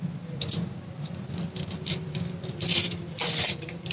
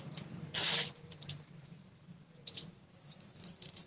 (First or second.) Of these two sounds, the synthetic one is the second